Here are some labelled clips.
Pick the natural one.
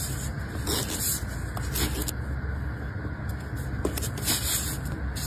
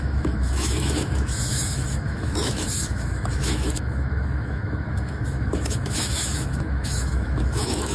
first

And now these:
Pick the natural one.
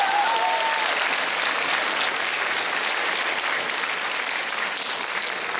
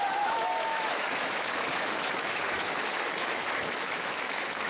first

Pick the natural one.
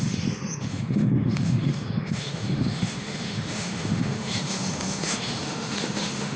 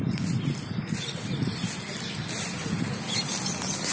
second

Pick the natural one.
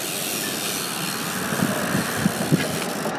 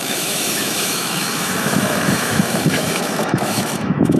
first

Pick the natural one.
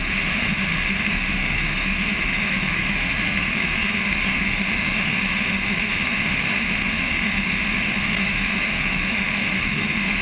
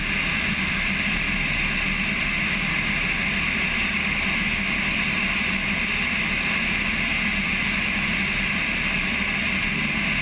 second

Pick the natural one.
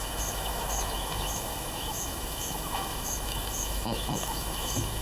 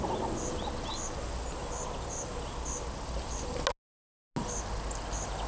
second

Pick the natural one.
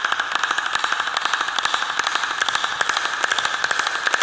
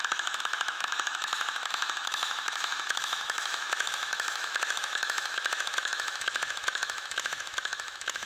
first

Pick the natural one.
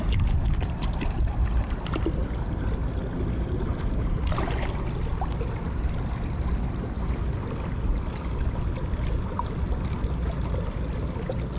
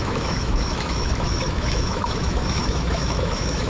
first